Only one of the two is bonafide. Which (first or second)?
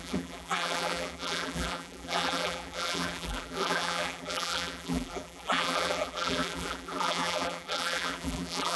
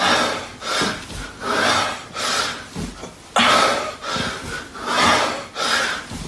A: second